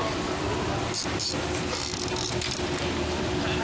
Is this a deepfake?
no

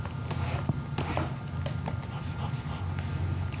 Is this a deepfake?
no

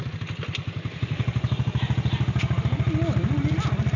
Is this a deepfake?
no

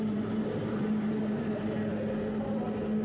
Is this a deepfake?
no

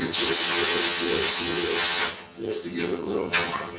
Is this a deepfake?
yes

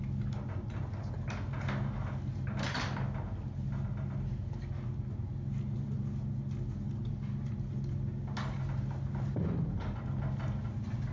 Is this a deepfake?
no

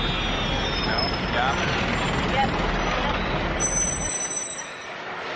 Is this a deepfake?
no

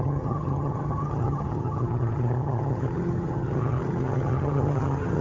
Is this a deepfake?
yes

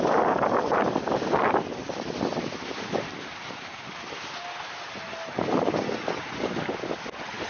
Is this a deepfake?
no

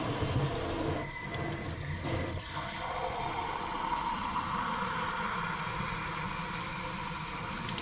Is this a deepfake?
no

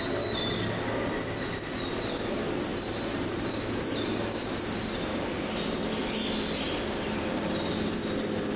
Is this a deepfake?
no